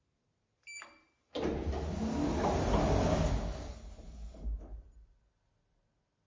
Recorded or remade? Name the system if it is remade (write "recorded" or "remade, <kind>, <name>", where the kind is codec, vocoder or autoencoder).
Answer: recorded